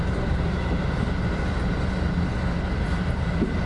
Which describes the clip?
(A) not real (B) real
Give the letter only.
B